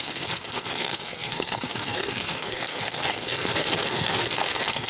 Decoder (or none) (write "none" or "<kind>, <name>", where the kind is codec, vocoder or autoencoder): codec, SNAC